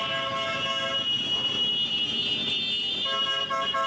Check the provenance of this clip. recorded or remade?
recorded